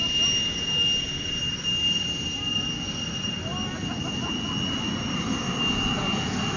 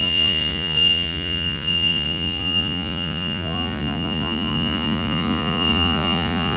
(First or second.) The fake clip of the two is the second